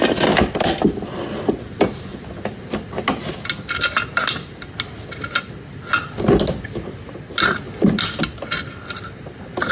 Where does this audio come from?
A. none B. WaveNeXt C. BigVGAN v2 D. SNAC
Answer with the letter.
A